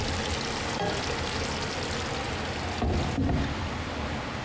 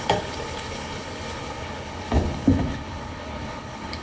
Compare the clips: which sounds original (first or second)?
first